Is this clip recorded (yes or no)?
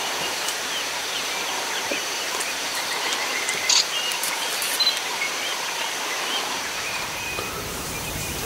no